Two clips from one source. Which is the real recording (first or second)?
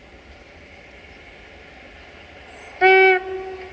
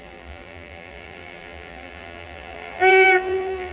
first